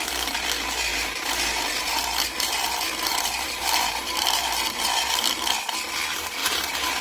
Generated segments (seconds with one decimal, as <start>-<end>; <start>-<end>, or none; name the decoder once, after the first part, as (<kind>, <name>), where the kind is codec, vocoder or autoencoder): 0.9-5.1 (vocoder, BigVGAN v2); 6.4-7.0